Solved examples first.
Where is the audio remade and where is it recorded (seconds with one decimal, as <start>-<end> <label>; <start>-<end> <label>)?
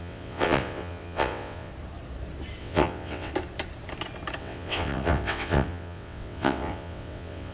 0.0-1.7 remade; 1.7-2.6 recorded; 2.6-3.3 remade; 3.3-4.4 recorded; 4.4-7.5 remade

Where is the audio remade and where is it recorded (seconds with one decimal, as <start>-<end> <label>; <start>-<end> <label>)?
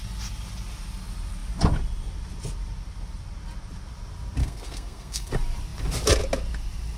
0.0-4.4 recorded; 4.4-5.3 remade; 5.3-7.0 recorded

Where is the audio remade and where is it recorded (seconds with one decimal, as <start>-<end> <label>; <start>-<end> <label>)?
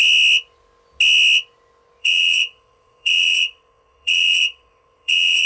0.0-2.0 recorded; 2.0-5.5 remade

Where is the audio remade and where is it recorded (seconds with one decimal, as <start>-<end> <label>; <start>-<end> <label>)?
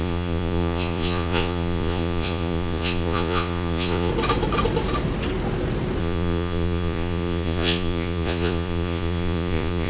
0.0-4.1 remade; 4.1-6.0 recorded; 6.0-9.9 remade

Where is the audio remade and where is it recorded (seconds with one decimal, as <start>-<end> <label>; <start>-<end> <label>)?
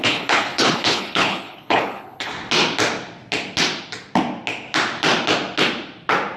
0.0-2.3 remade; 2.3-6.4 recorded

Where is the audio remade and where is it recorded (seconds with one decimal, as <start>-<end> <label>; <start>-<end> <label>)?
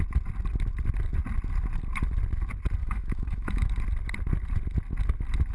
0.0-2.8 recorded; 2.8-3.7 remade; 3.7-5.5 recorded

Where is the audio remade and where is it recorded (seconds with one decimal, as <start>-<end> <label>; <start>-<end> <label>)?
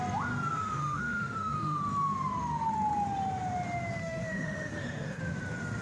0.0-0.6 recorded; 0.6-1.8 remade; 1.8-4.0 recorded; 4.0-5.2 remade; 5.2-5.8 recorded